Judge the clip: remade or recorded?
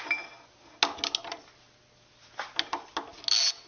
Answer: recorded